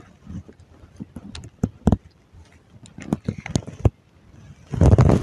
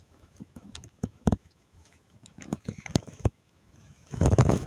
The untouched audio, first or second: first